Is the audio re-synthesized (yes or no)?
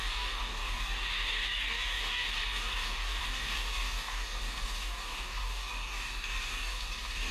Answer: yes